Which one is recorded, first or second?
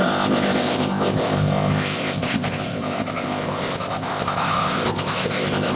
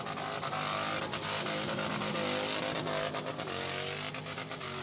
second